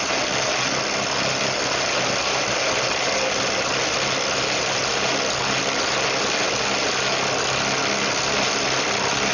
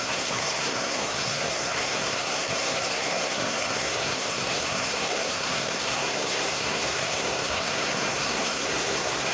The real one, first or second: first